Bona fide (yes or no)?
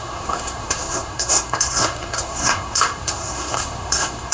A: no